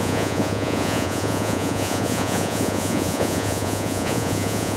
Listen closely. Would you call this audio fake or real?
fake